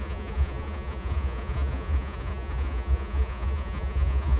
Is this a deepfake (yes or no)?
yes